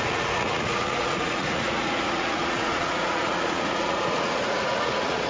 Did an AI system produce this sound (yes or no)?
yes